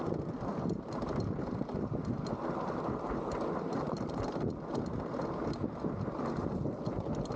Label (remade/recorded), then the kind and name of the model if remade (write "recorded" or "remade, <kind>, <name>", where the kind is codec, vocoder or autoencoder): recorded